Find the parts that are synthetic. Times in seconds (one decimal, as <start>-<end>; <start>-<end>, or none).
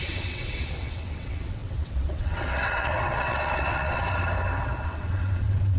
0.0-4.0; 4.8-5.8